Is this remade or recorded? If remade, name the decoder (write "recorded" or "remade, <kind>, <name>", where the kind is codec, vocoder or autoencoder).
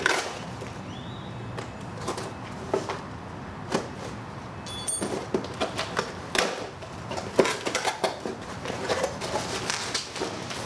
recorded